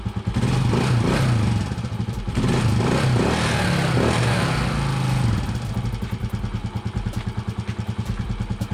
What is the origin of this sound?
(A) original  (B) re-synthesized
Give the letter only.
A